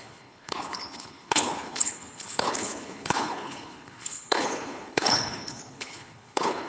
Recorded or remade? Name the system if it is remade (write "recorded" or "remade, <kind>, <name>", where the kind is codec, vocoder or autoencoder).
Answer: remade, codec, HILCodec